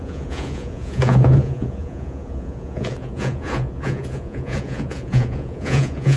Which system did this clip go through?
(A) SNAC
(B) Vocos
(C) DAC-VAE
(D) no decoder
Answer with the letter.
B